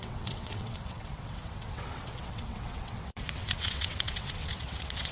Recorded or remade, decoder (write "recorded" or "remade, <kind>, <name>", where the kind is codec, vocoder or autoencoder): remade, vocoder, WaveNeXt